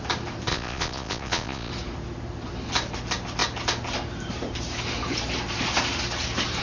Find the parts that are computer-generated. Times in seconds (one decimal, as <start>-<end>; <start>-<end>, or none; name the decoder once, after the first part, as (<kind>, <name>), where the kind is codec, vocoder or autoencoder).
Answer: 0.5-1.7 (vocoder, Vocos)